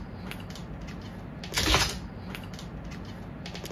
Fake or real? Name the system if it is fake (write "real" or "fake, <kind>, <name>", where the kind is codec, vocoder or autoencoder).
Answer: real